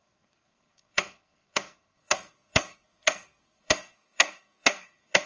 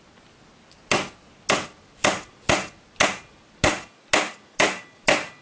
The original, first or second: second